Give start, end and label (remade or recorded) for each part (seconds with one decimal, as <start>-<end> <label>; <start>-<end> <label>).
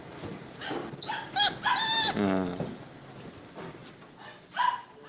0.0-5.1 recorded